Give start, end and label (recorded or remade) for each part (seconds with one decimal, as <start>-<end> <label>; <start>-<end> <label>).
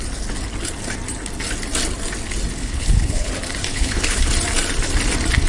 0.0-2.6 recorded; 2.6-3.3 remade; 3.3-3.7 recorded; 3.7-4.3 remade; 4.3-5.5 recorded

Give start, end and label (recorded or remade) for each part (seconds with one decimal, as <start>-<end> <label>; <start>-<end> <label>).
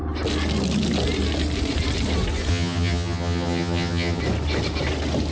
0.0-2.5 recorded; 2.5-4.2 remade; 4.2-5.3 recorded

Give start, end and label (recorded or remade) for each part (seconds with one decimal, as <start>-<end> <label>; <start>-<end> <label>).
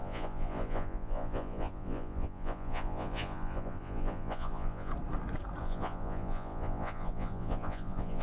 0.0-4.9 remade; 4.9-5.6 recorded; 5.6-8.2 remade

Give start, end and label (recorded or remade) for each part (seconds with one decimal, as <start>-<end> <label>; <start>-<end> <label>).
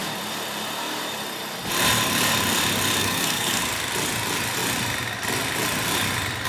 0.0-3.0 recorded; 3.0-3.6 remade; 3.6-6.5 recorded